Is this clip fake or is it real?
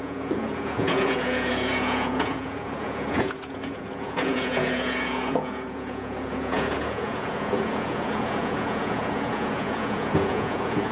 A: fake